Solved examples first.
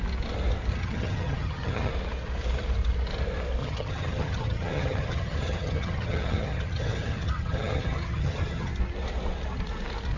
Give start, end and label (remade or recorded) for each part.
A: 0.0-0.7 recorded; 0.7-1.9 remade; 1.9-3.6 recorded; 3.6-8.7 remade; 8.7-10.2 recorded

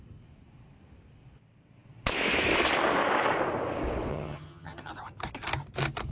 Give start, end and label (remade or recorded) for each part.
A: 0.0-4.1 recorded; 4.1-4.9 remade; 4.9-6.1 recorded